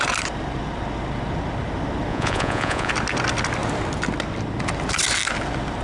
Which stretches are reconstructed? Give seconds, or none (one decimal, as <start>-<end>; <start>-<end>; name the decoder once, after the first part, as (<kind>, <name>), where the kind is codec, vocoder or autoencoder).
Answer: 2.1-2.9 (vocoder, Vocos)